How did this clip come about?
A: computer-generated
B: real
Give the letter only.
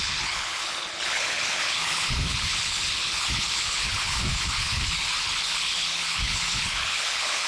A